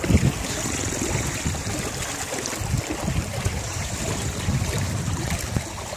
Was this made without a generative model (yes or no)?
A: yes